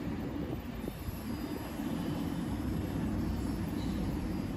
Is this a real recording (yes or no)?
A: no